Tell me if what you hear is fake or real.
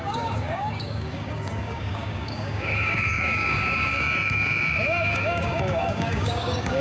fake